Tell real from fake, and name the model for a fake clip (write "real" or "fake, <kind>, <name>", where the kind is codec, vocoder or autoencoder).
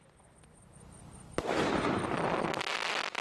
real